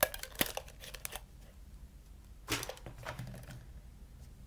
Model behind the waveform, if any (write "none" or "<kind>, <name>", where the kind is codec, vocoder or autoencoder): none